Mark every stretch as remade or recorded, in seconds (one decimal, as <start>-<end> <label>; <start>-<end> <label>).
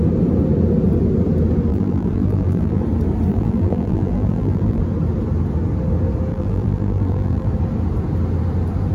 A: 0.0-1.7 recorded; 1.7-2.8 remade; 2.8-3.3 recorded; 3.3-4.8 remade; 4.8-6.3 recorded; 6.3-7.5 remade; 7.5-8.9 recorded